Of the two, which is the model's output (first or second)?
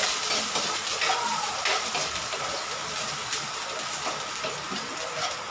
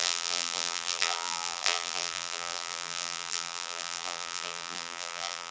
second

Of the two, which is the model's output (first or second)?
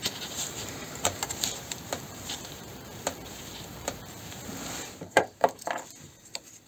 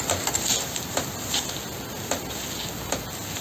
first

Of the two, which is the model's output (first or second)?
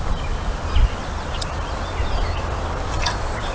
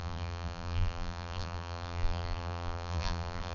second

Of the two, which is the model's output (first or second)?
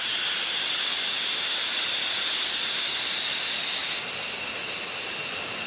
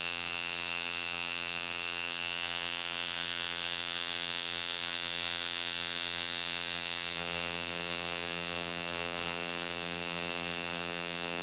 second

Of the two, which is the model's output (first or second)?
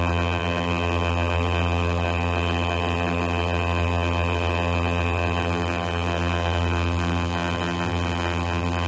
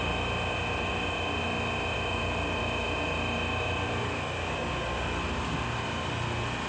first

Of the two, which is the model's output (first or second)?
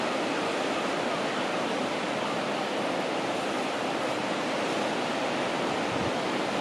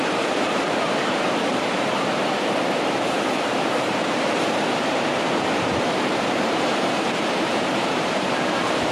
second